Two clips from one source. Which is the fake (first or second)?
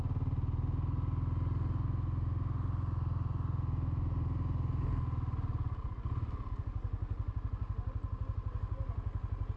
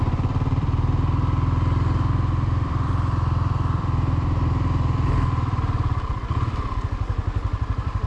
second